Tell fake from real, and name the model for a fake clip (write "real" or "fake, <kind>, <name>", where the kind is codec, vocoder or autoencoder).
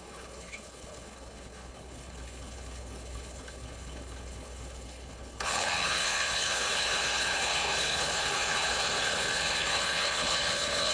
fake, codec, HILCodec